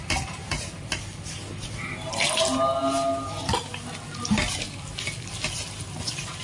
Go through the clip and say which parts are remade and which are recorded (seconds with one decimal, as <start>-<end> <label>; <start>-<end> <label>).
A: 0.0-2.8 recorded; 2.8-3.7 remade; 3.7-6.4 recorded